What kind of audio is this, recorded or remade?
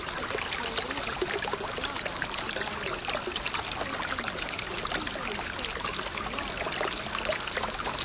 recorded